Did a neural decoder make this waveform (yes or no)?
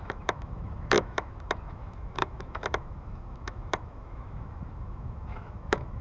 yes